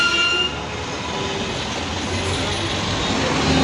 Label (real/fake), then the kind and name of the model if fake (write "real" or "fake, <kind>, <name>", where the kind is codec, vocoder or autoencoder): real